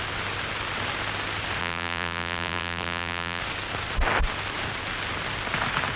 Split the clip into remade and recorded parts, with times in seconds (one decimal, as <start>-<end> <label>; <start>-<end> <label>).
0.0-1.6 recorded; 1.6-3.4 remade; 3.4-6.0 recorded